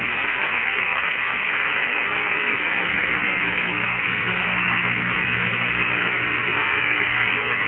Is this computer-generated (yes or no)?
yes